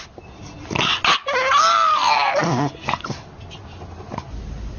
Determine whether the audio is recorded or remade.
recorded